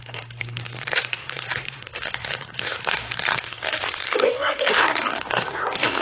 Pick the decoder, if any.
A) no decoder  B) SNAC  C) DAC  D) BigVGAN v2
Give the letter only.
B